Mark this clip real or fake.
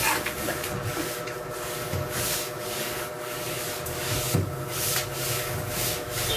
fake